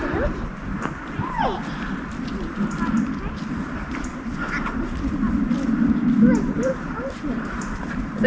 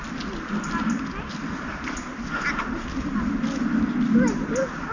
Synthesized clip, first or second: first